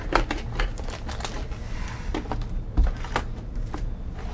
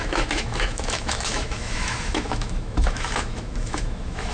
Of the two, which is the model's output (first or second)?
second